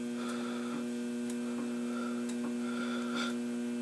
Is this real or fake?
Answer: real